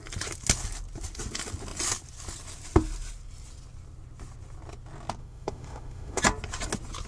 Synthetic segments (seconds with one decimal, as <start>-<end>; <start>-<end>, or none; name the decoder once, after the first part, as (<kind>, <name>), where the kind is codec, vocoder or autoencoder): 5.2-6.2 (autoencoder, DAC-VAE)